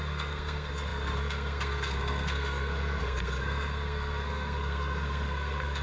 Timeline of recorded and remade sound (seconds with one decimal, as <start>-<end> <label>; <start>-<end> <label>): 0.0-5.8 remade